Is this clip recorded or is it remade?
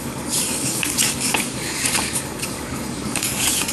remade